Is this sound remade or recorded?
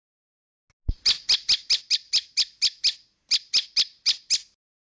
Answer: recorded